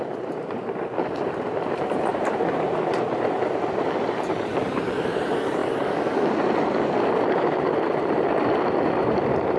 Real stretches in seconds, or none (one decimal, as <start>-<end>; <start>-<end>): 5.6-7.1

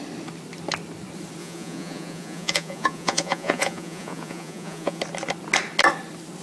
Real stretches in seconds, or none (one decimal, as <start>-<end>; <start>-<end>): 0.0-1.4; 5.0-6.4

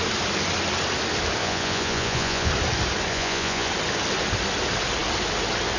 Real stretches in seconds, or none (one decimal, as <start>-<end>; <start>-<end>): 0.0-1.4; 2.5-3.1; 3.7-5.8

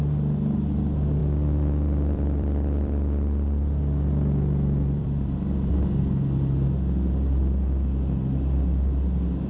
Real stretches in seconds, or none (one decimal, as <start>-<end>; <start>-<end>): 0.0-1.2; 5.7-9.5

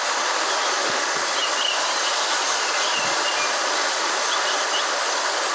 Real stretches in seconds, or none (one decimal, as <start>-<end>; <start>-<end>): 0.0-5.5

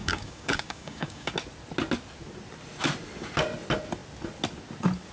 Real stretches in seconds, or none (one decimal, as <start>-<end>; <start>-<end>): 1.3-5.1